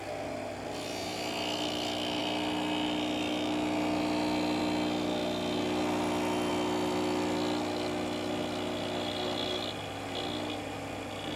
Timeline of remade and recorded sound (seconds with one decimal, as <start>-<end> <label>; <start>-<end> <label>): 0.0-11.4 recorded